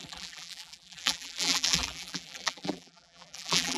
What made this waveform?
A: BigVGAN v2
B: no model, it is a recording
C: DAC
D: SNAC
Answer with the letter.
A